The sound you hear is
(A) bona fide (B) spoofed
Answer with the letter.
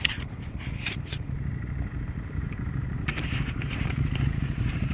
B